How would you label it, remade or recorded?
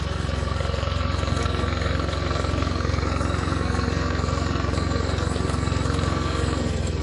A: remade